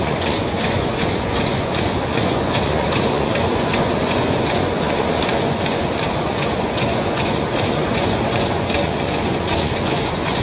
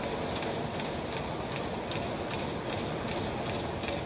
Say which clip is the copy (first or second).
first